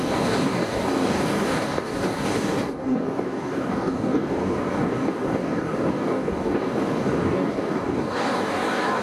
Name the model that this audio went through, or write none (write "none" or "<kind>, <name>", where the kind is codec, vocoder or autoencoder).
codec, DAC